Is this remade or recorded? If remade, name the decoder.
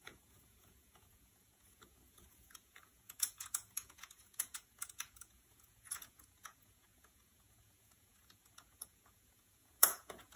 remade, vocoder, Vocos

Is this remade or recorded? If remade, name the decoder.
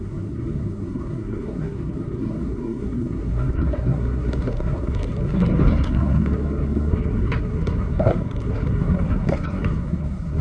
remade, codec, SNAC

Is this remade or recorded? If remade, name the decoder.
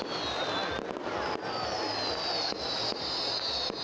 recorded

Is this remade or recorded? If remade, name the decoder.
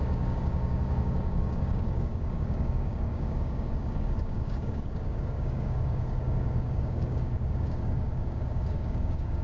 remade, codec, DAC